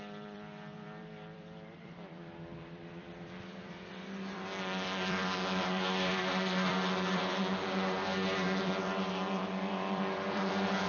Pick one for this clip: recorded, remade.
remade